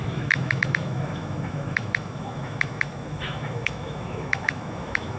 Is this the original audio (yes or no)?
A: no